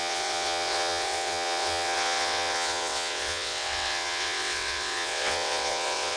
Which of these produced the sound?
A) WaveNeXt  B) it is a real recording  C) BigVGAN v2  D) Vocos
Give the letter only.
A